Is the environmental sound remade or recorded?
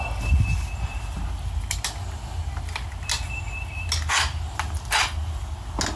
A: recorded